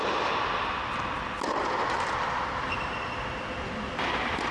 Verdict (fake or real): real